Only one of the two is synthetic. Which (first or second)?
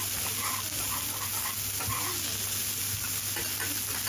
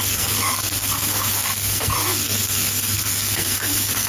second